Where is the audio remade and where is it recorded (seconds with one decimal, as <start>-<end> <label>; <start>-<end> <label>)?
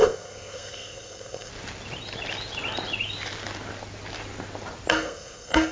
0.0-1.5 remade; 1.5-4.9 recorded; 4.9-5.7 remade